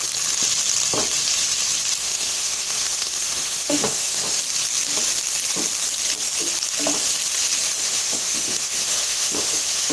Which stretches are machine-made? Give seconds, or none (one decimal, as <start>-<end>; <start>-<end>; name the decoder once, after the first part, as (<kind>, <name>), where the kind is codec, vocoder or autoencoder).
2.0-4.4 (autoencoder, DAC-VAE); 7.8-9.9

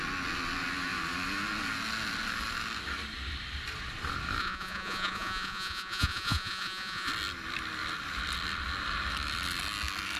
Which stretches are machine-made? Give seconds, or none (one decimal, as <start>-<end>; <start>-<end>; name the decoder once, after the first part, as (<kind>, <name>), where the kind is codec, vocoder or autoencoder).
4.4-7.1 (vocoder, Vocos)

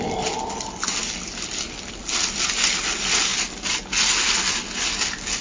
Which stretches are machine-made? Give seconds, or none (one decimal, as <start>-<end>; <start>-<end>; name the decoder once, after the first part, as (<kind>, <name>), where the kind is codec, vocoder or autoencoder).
none